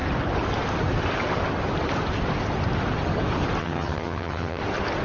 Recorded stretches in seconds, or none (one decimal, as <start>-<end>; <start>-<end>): 0.0-3.6; 4.6-5.0